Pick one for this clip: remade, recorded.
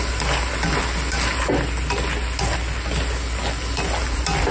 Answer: recorded